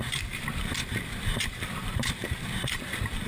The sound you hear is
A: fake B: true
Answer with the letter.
A